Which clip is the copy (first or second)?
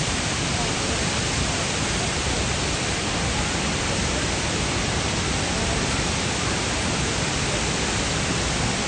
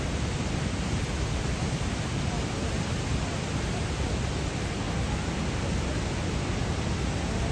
first